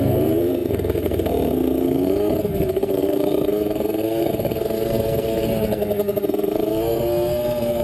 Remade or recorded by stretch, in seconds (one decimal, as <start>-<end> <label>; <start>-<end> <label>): 0.0-7.8 remade